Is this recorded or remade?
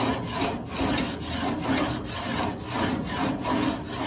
recorded